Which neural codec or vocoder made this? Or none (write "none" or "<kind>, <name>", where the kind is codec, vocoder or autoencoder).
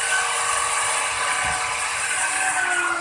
none